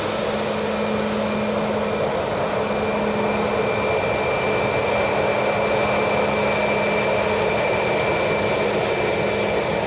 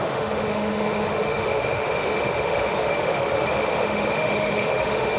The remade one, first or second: second